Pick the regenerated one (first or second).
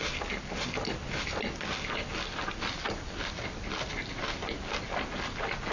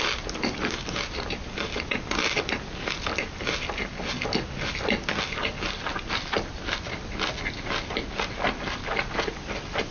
first